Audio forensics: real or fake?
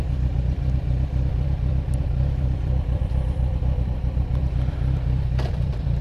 fake